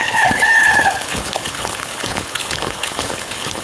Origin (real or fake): fake